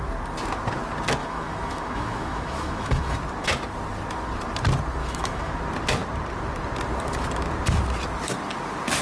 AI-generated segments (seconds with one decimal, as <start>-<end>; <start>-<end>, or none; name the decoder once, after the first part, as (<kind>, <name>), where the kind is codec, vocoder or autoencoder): 1.2-3.2 (autoencoder, DAC-VAE); 5.0-5.5